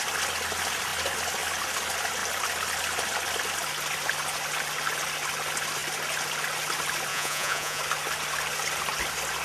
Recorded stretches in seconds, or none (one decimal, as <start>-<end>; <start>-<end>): 0.0-7.1; 7.8-9.4